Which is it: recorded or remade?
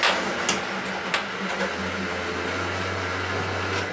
recorded